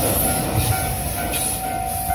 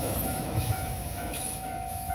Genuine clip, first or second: first